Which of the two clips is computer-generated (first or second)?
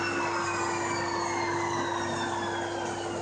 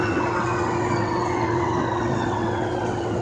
second